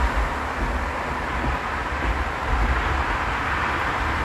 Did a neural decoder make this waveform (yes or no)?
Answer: no